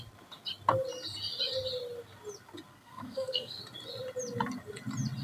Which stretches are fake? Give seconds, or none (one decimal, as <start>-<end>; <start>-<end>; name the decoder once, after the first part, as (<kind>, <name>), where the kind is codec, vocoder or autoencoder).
2.7-3.6 (codec, SNAC)

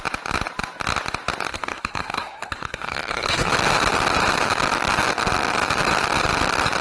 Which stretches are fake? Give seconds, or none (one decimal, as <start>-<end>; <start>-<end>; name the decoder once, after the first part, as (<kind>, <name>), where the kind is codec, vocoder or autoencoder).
1.5-3.5 (codec, SNAC)

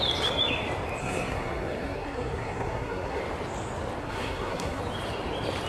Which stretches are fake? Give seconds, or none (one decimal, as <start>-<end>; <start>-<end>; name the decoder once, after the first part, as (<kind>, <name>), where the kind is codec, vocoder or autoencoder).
1.0-3.2 (codec, SNAC); 4.0-4.8

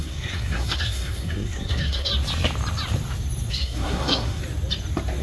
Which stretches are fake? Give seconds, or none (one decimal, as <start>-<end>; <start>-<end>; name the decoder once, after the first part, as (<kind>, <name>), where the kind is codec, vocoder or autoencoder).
0.0-2.1 (codec, SNAC); 3.5-4.4